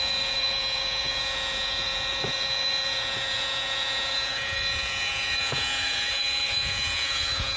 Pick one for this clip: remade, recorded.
remade